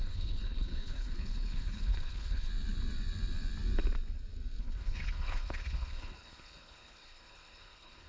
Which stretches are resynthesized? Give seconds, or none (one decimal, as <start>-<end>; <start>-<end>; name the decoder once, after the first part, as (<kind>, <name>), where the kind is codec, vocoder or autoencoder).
0.0-2.5 (codec, HILCodec); 4.6-8.1